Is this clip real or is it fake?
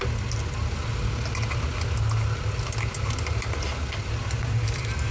real